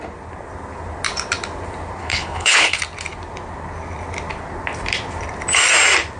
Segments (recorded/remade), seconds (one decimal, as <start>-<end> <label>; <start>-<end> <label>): 0.0-2.0 recorded; 2.0-2.8 remade; 2.8-6.2 recorded